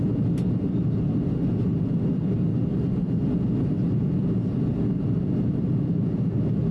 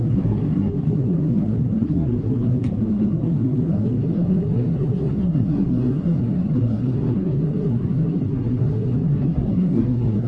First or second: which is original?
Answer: first